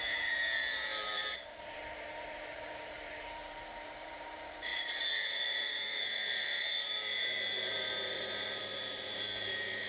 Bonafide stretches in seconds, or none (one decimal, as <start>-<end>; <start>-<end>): none